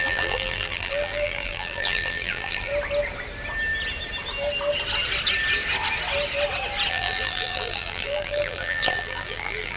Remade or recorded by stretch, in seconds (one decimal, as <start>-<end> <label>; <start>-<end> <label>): 0.0-2.7 remade; 2.7-6.9 recorded; 6.9-9.8 remade